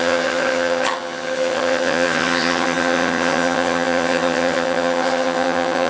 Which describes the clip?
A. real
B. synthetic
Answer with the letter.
B